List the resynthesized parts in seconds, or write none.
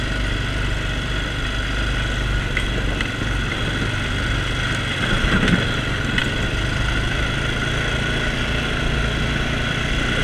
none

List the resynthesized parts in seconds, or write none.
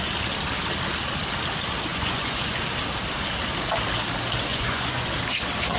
1.9-2.6 (vocoder, Vocos); 4.5-5.1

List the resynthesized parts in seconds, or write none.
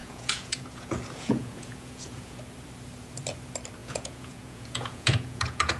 0.0-2.4 (vocoder, Vocos); 3.8-5.8